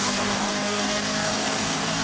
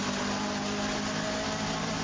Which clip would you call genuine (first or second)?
second